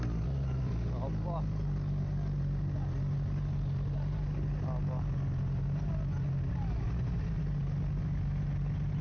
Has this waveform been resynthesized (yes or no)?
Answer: no